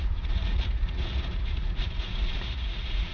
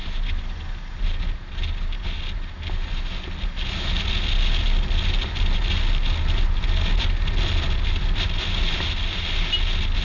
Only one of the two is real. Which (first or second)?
second